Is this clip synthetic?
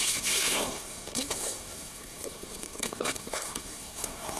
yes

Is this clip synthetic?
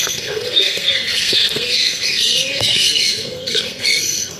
yes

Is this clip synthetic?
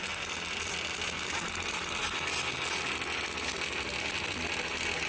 no